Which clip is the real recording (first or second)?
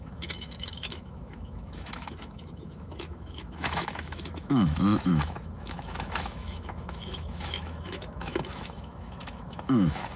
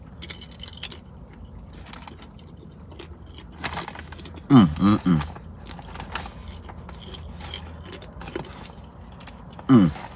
second